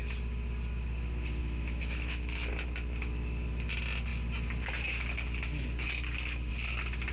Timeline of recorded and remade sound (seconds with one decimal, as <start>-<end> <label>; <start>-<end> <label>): 0.0-1.4 recorded; 1.4-2.5 remade; 2.5-7.1 recorded